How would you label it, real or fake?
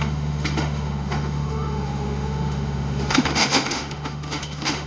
fake